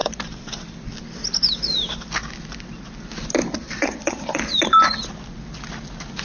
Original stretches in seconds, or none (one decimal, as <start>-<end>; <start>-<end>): 2.1-3.4; 5.1-6.2